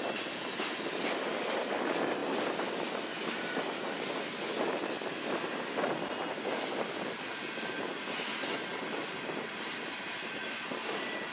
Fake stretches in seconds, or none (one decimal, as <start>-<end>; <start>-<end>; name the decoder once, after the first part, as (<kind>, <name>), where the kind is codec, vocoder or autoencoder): 8.7-9.8 (vocoder, BigVGAN v2)